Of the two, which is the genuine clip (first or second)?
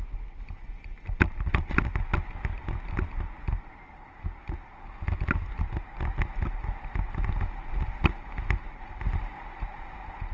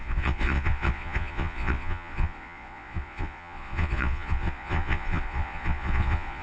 first